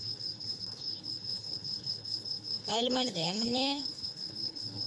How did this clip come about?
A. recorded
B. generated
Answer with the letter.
B